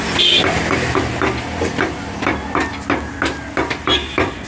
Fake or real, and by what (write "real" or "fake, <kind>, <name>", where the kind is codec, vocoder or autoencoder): real